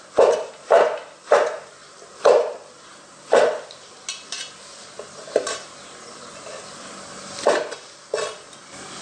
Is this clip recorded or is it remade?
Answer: recorded